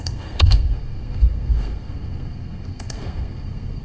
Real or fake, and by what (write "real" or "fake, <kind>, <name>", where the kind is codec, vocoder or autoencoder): fake, codec, SNAC